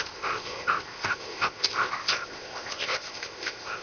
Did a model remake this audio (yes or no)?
yes